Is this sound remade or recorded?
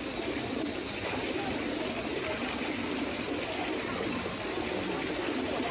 recorded